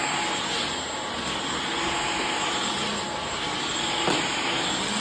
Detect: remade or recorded recorded